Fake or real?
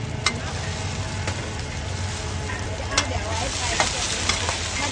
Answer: real